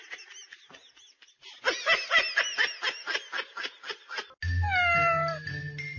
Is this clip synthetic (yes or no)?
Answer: no